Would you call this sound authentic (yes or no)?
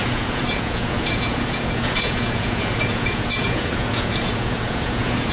no